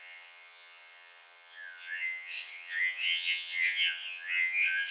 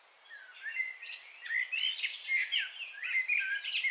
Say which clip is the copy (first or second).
first